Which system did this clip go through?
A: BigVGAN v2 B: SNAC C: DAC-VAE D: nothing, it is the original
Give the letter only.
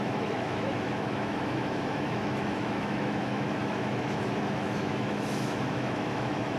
C